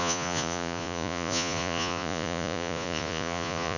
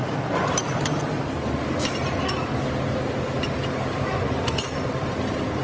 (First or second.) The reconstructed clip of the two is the first